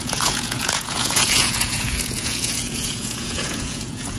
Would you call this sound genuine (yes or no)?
no